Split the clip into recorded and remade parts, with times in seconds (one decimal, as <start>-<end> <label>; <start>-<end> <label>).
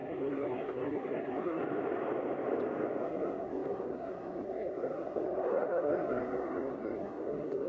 0.0-1.6 remade; 1.6-3.0 recorded; 3.0-7.7 remade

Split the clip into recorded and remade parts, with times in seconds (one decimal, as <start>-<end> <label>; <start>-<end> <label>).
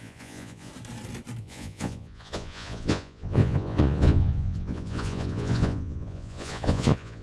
0.0-0.7 remade; 0.7-1.4 recorded; 1.4-7.2 remade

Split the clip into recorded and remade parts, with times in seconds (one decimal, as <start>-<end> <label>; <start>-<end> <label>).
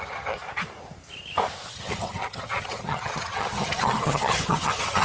0.0-0.4 remade; 0.4-1.7 recorded; 1.7-5.0 remade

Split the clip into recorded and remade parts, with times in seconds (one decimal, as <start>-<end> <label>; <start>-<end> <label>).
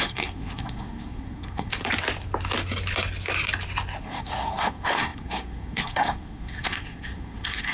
0.0-1.7 remade; 1.7-4.0 recorded; 4.0-7.7 remade